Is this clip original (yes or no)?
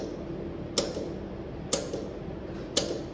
yes